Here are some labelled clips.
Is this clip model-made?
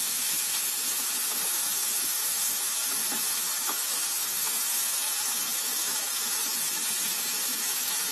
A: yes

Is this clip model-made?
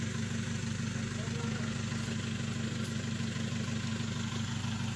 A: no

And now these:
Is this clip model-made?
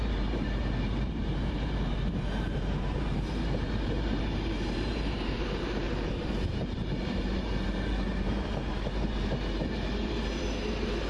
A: yes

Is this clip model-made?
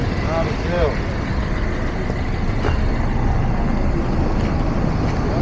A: no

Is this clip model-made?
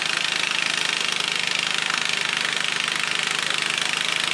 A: no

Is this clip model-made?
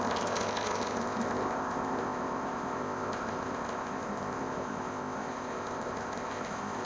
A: yes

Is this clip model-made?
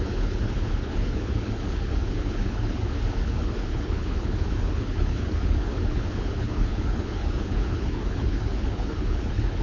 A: yes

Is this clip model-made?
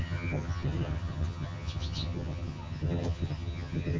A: yes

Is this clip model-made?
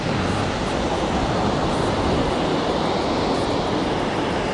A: no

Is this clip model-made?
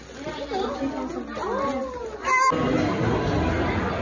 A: no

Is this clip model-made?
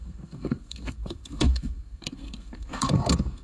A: yes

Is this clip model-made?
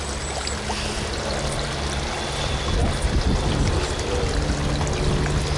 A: no